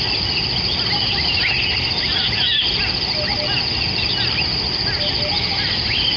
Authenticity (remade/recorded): recorded